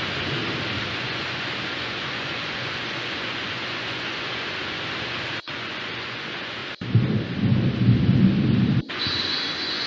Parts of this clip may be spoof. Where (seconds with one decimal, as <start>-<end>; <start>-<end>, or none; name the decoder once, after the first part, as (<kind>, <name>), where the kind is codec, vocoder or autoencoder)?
0.0-0.4 (vocoder, Vocos); 0.9-6.6; 8.9-9.9